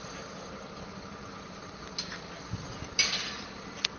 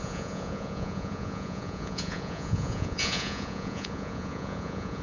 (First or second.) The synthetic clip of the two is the second